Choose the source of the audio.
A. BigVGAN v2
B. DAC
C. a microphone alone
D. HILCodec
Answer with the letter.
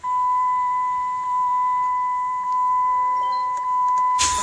A